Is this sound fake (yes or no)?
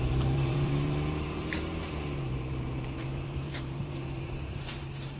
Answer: yes